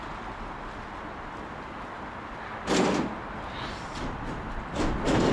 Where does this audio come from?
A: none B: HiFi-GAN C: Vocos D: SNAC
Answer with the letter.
A